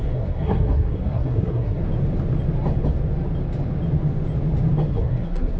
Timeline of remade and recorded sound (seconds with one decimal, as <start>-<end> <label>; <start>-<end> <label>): 0.0-1.8 remade; 1.8-4.9 recorded; 4.9-5.6 remade